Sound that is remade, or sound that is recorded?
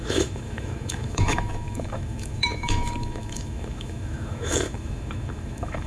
remade